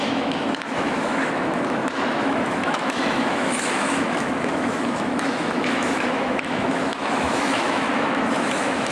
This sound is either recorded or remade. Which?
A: remade